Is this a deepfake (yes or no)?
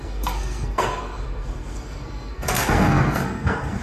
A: yes